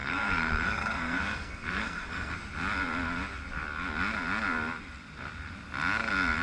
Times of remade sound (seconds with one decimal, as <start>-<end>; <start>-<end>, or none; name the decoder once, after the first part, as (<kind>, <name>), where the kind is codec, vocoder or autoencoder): 0.0-2.3 (codec, SNAC)